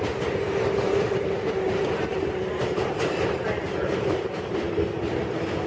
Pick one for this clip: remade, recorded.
remade